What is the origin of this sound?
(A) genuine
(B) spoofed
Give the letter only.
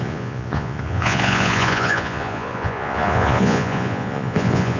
B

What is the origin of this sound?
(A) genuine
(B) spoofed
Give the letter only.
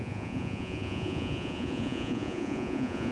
B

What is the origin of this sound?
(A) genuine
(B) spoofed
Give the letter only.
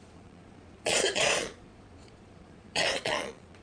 B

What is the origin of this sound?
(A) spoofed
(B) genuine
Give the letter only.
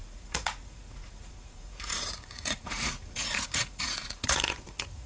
A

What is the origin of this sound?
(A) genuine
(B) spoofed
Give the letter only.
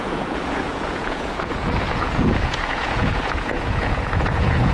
B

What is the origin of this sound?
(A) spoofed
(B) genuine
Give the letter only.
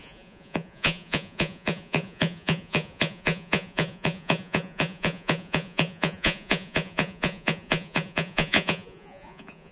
A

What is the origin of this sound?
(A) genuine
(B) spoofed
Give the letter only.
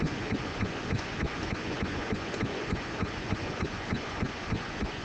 B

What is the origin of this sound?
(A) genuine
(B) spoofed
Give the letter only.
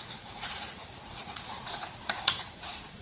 B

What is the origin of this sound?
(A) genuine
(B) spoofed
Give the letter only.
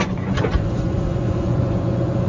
B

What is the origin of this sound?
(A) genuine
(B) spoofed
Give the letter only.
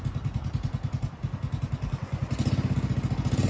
A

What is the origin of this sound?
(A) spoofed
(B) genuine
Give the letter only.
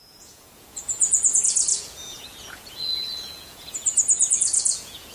A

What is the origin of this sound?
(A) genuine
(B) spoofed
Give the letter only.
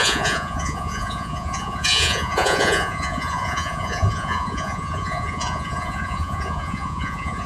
B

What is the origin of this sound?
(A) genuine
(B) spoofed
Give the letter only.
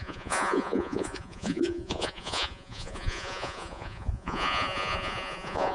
B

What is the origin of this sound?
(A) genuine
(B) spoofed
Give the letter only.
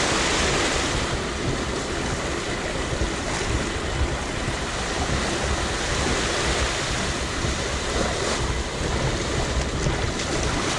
A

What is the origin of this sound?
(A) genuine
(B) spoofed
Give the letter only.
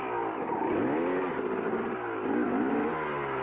A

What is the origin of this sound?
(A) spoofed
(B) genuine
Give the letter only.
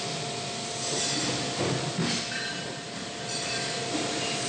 B